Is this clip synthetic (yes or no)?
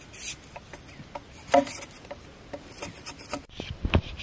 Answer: no